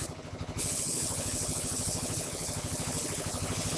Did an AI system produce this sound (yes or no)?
yes